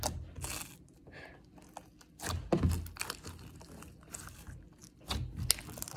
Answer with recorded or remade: recorded